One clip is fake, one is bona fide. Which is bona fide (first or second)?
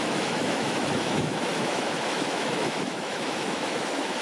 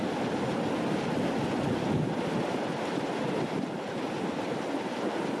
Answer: second